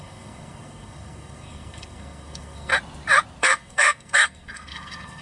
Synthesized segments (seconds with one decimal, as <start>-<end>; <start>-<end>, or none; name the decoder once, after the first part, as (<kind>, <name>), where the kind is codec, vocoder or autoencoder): 0.0-2.7 (codec, SNAC); 3.4-5.2